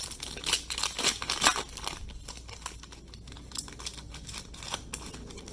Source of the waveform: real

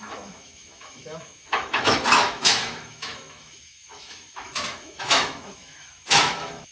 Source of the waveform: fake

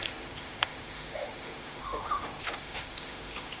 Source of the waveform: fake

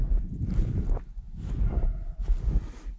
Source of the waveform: real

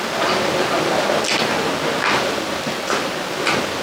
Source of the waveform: real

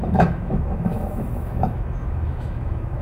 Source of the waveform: fake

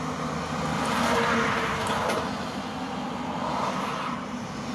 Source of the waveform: real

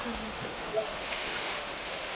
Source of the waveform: fake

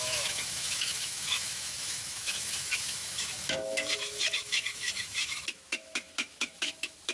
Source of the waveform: fake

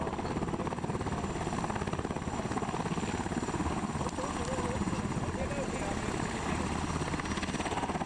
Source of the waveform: real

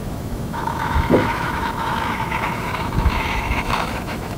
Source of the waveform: fake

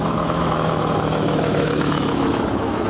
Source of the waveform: fake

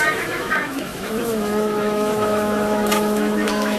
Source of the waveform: fake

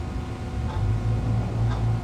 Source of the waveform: real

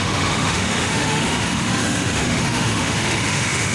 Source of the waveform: fake